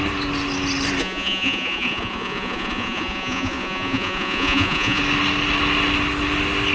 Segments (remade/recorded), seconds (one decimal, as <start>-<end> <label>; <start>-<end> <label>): 0.0-1.0 recorded; 1.0-5.0 remade; 5.0-6.7 recorded